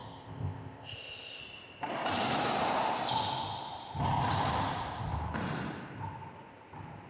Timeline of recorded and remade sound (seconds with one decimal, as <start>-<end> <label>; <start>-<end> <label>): 0.0-1.4 remade; 1.4-7.1 recorded